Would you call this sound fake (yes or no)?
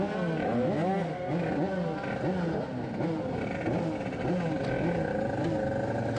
no